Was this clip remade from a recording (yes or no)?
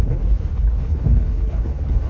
yes